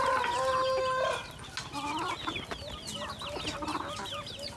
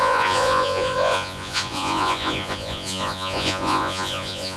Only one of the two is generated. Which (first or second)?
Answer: second